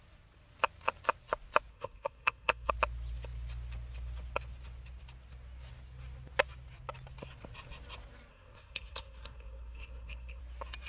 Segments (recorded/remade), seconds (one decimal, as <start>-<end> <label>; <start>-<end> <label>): 0.0-1.7 recorded; 1.7-2.7 remade; 2.7-8.3 recorded; 8.3-10.4 remade; 10.4-10.9 recorded